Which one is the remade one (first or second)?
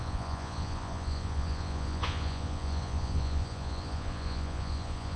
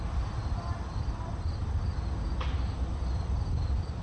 first